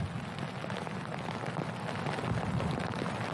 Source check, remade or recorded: recorded